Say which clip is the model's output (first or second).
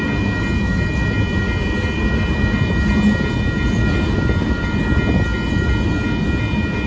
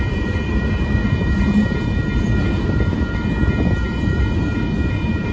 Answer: second